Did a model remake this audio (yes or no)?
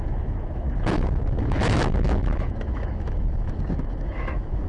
yes